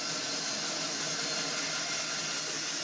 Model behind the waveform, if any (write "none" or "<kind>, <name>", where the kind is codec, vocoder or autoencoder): none